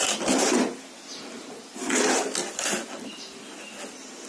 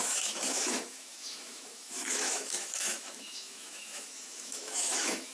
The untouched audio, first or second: first